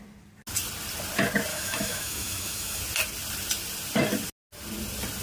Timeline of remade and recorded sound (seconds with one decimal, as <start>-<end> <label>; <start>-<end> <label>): 0.0-1.5 recorded; 1.5-2.8 remade; 2.8-5.2 recorded